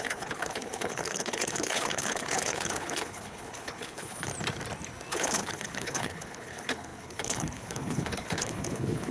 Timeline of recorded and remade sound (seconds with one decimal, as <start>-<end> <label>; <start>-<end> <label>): 0.0-4.3 remade; 4.3-5.1 recorded; 5.1-9.1 remade